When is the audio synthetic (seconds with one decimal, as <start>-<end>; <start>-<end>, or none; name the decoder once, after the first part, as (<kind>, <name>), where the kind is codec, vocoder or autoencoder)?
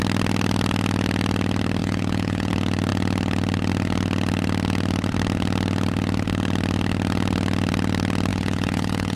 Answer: 1.8-2.5 (vocoder, Vocos); 8.3-9.2